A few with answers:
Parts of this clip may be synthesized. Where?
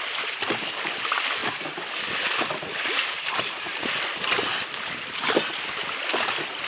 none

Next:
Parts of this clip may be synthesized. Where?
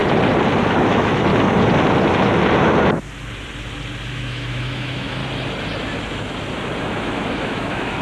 0.7-1.3 (autoencoder, DAC-VAE); 4.1-5.2; 6.8-8.0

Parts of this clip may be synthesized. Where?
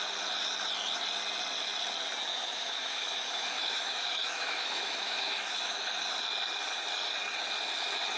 2.3-5.9 (autoencoder, DAC-VAE)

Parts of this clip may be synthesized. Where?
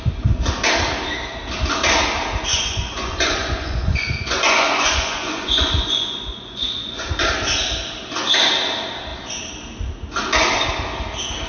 2.5-7.1 (vocoder, Vocos)